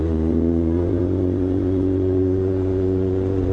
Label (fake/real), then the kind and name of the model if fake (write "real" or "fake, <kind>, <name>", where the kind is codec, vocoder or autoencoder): fake, vocoder, Vocos